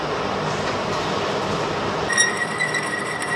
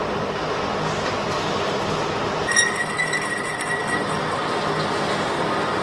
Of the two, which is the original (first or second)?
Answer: second